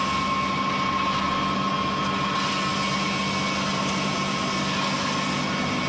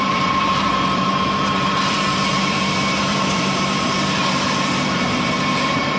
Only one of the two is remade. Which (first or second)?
second